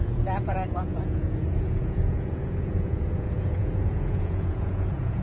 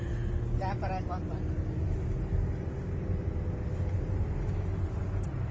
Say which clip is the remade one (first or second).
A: first